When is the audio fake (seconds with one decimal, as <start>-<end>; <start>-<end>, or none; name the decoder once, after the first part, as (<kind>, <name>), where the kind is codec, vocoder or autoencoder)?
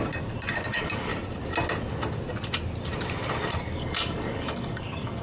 0.5-1.1 (codec, DAC); 3.8-5.2